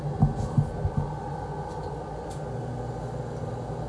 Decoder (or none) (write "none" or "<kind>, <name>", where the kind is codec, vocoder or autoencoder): none